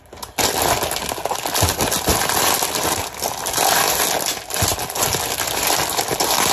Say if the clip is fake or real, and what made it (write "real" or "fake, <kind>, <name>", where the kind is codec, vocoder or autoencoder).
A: fake, vocoder, BigVGAN v2